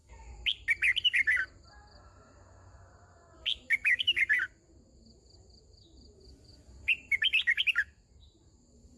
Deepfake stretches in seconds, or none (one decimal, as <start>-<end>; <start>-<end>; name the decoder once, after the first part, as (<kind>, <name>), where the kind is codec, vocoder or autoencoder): 3.5-4.2 (autoencoder, DAC-VAE)